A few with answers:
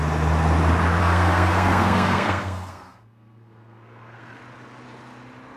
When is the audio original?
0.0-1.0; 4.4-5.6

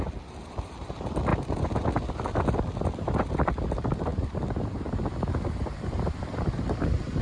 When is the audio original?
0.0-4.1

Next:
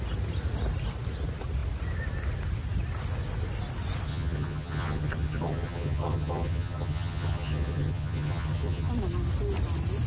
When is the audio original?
0.0-4.1; 8.9-10.1

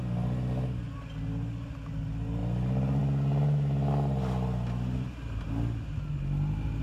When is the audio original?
0.0-6.8

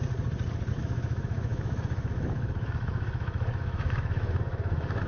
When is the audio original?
0.0-0.7

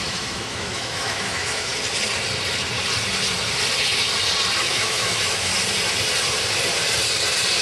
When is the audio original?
1.7-4.6; 5.5-7.6

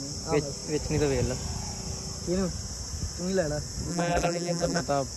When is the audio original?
0.0-3.9; 4.8-5.2

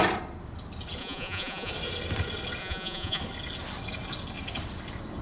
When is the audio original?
0.0-1.0; 1.7-2.6; 3.2-5.2